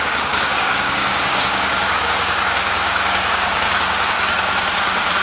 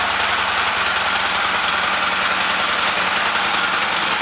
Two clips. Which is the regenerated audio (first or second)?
first